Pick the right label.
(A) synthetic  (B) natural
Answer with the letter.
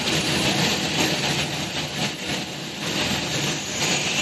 B